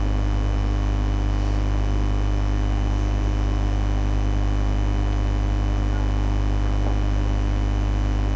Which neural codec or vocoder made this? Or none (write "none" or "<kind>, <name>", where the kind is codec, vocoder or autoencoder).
none